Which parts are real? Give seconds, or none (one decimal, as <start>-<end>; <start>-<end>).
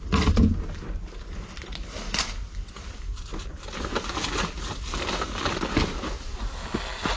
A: 0.0-7.2